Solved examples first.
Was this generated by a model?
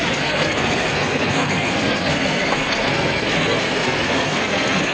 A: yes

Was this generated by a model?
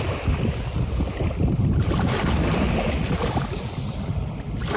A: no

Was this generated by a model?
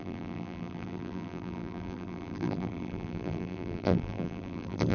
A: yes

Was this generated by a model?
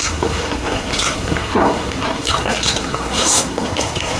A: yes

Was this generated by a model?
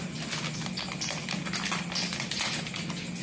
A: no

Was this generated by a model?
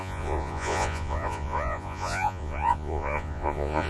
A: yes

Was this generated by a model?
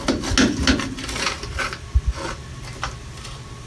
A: no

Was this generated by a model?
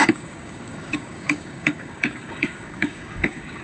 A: yes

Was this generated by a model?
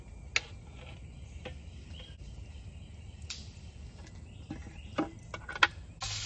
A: no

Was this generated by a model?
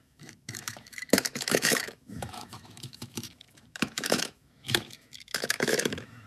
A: yes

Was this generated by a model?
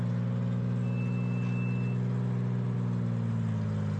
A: no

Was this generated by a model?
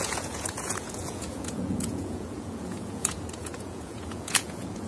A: yes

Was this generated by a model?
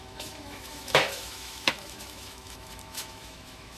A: yes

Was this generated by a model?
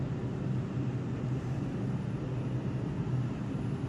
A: no